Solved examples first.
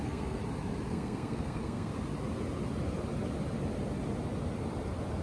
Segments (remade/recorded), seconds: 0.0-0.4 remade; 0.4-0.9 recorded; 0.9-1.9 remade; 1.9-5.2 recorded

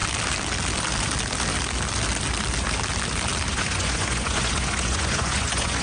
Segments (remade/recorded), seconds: 0.0-3.5 recorded; 3.5-5.8 remade

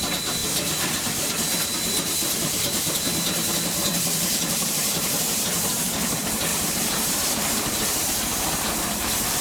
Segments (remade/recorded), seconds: 0.0-3.8 recorded; 3.8-5.8 remade; 5.8-6.5 recorded; 6.5-8.7 remade; 8.7-9.4 recorded